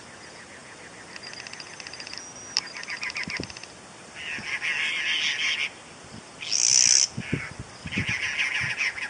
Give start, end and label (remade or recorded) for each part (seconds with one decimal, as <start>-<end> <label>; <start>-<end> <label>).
0.0-9.1 recorded